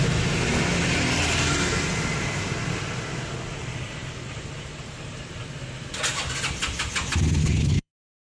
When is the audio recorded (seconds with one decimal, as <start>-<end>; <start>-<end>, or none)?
0.0-7.4; 7.9-8.3

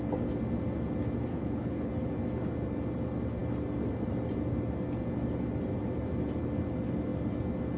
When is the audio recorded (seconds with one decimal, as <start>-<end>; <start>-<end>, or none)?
0.0-1.3; 1.9-7.8

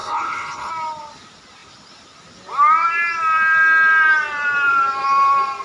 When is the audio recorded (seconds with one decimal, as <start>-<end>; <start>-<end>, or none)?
0.7-5.6

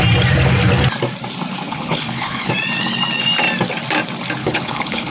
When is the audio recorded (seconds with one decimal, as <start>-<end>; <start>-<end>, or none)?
0.0-1.7; 2.5-4.4